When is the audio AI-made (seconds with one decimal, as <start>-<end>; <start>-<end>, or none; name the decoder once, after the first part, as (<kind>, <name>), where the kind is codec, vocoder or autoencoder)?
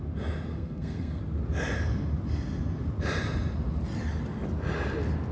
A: 0.5-1.2 (codec, SNAC)